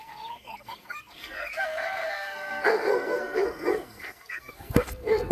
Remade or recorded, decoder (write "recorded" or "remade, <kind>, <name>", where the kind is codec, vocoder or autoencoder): remade, codec, SNAC